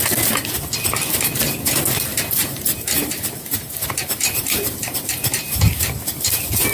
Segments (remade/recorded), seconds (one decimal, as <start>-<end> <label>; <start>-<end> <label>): 0.0-2.1 recorded; 2.1-5.8 remade; 5.8-6.7 recorded